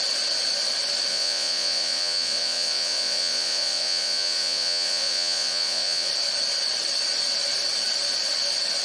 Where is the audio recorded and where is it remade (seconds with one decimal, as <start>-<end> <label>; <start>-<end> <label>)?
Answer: 0.0-1.1 recorded; 1.1-6.1 remade; 6.1-8.8 recorded